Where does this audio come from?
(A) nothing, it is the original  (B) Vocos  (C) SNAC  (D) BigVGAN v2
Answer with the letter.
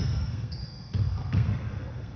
C